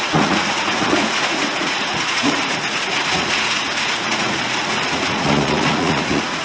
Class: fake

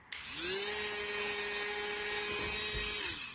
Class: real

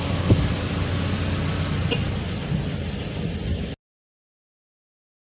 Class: real